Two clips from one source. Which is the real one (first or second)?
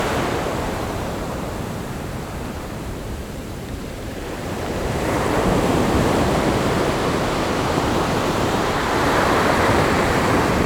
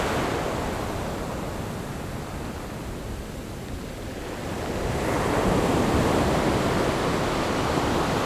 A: second